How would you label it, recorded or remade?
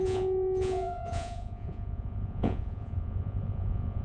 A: remade